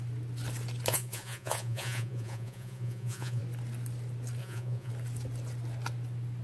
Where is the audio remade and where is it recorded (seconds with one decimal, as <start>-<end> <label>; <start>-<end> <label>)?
0.0-0.9 recorded; 0.9-3.4 remade; 3.4-4.4 recorded; 4.4-4.9 remade; 4.9-6.4 recorded